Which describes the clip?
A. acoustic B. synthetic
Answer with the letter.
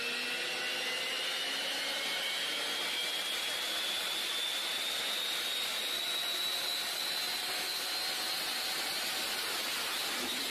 A